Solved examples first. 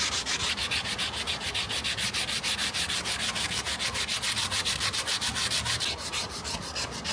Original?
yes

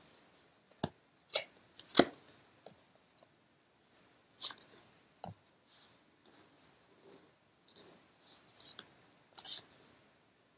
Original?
yes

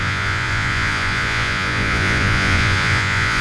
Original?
no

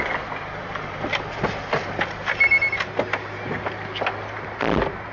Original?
yes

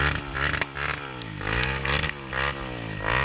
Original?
yes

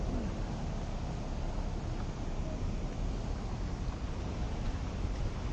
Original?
yes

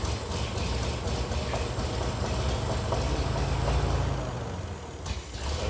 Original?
yes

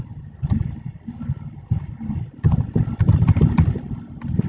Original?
yes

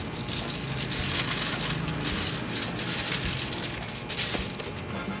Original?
yes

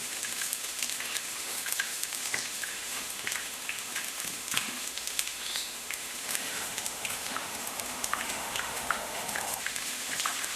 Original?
no